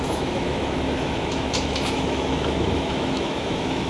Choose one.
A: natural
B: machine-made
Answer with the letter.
B